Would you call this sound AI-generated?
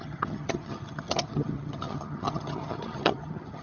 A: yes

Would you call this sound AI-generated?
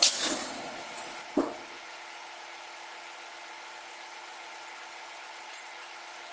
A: no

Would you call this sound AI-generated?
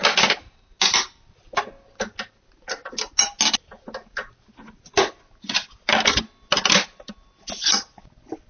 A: no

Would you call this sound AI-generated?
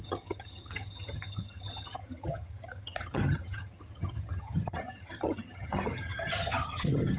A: yes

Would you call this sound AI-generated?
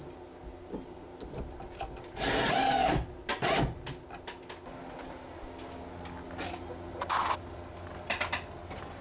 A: no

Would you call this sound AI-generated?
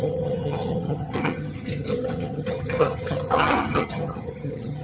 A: yes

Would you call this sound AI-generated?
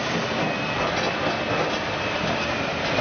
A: no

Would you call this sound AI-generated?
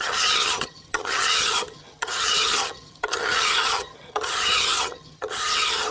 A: yes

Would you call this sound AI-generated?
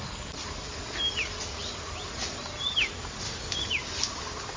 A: no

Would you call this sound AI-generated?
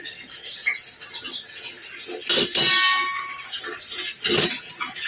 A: no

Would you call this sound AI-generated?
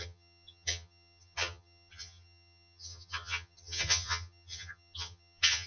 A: yes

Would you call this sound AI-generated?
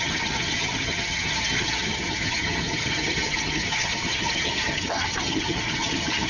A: yes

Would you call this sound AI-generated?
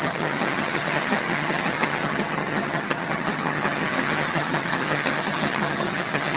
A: yes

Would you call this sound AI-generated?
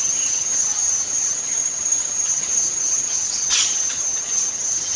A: yes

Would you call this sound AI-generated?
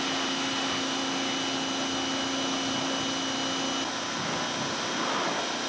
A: no